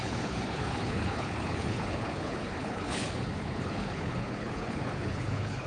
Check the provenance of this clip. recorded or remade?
remade